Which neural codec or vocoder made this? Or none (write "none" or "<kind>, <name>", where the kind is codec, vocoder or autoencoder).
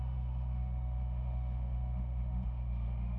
autoencoder, DAC-VAE